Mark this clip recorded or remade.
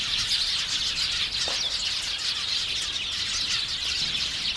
recorded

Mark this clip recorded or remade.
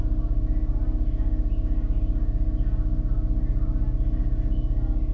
recorded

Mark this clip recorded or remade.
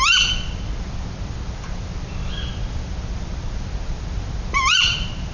recorded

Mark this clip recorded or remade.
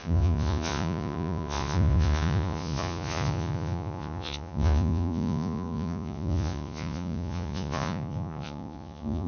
remade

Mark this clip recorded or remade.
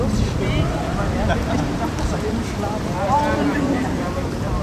recorded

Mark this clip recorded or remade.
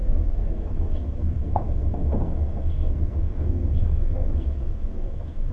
remade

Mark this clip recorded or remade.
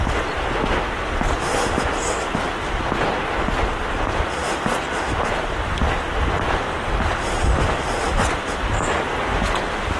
remade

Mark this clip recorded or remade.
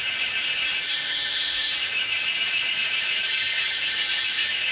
remade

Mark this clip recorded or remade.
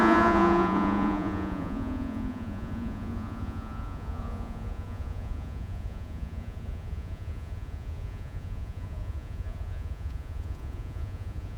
remade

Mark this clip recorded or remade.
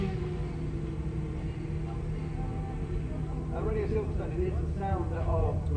recorded